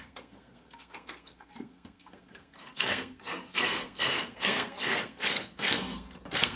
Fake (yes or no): yes